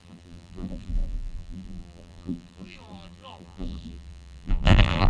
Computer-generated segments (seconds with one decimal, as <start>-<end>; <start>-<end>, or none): 0.0-5.1